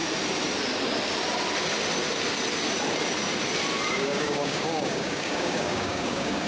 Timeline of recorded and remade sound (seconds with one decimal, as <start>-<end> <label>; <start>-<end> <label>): 0.0-3.9 recorded; 3.9-6.5 remade